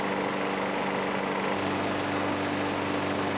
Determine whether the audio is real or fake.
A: real